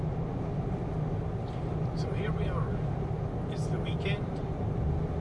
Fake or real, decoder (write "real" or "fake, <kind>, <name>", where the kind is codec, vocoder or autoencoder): real